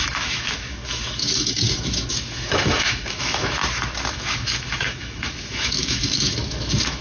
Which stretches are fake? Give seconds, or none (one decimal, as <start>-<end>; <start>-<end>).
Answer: 0.0-3.6; 4.1-7.0